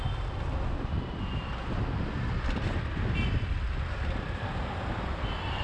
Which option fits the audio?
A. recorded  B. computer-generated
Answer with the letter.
A